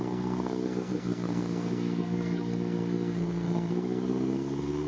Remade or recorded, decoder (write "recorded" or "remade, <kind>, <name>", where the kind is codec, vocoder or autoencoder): remade, codec, SNAC